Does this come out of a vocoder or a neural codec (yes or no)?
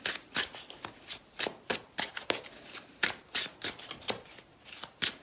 no